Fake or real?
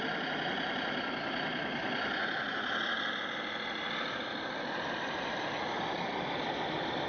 real